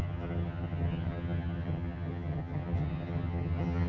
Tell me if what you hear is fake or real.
fake